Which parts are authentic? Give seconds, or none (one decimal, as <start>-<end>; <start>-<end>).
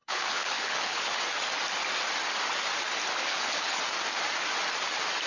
1.2-3.2; 3.8-5.3